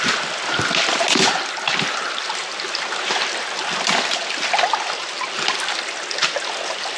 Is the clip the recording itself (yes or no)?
yes